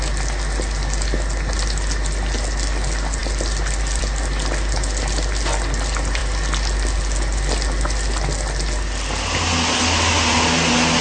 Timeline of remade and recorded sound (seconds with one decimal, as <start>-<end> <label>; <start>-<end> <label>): 0.0-11.0 recorded